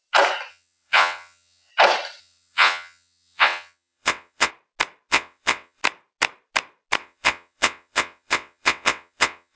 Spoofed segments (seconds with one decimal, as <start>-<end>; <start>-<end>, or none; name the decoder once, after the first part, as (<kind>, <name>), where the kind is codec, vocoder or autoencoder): 0.5-1.7 (vocoder, WaveNeXt); 2.2-4.5; 5.1-5.8; 7.0-9.6